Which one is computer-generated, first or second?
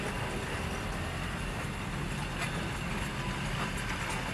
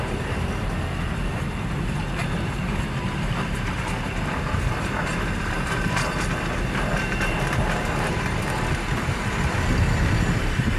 second